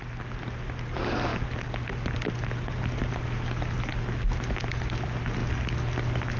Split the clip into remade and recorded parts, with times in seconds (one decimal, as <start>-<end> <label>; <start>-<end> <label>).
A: 0.0-6.4 recorded